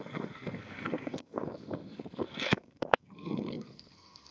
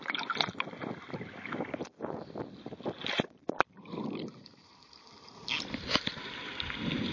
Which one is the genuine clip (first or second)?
second